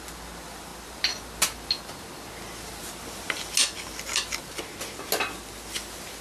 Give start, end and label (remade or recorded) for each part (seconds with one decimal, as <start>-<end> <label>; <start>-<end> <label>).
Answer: 0.0-6.2 recorded